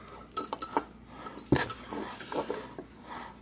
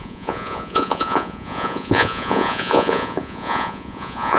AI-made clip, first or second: second